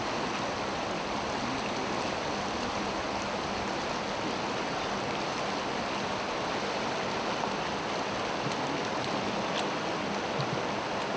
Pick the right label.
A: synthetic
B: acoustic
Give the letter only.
B